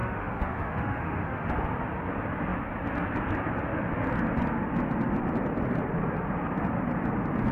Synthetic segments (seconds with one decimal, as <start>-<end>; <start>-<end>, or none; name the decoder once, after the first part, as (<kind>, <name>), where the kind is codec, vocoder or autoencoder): 0.0-1.5 (autoencoder, DAC-VAE)